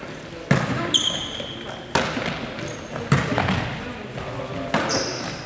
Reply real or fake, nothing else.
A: real